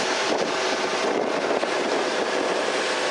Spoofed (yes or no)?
no